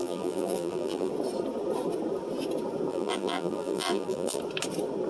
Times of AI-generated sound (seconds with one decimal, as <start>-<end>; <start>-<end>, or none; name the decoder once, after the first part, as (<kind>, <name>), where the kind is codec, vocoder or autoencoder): 0.0-1.1 (vocoder, BigVGAN v2); 2.9-4.4